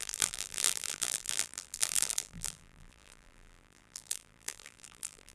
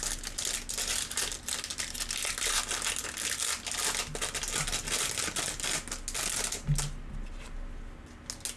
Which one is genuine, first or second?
second